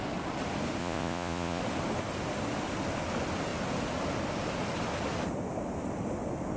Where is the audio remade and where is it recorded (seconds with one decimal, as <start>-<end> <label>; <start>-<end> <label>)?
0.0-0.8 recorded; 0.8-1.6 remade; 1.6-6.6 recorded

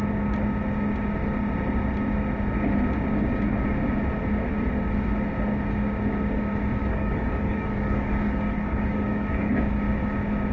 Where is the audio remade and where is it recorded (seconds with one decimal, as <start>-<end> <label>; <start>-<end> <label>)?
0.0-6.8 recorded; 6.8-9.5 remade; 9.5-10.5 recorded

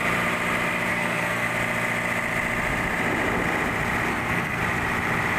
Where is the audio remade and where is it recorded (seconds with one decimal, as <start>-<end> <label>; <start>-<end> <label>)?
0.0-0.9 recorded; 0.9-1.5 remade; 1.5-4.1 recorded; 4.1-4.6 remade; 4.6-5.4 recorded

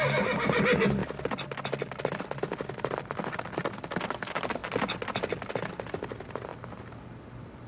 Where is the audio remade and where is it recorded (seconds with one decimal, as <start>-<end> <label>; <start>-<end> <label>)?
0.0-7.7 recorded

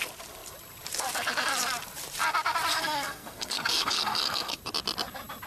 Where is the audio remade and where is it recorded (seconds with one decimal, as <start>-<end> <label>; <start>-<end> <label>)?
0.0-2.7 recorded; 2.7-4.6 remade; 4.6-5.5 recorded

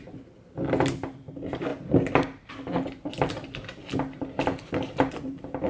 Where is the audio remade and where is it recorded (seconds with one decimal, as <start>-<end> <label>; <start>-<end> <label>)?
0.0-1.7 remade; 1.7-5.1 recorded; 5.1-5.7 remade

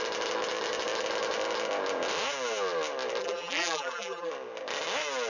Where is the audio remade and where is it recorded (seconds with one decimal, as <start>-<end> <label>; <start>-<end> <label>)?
0.0-3.2 recorded; 3.2-4.3 remade; 4.3-5.3 recorded

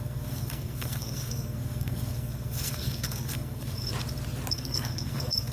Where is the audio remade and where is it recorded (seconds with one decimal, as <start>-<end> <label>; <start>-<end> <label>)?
0.0-3.9 remade; 3.9-4.5 recorded; 4.5-5.5 remade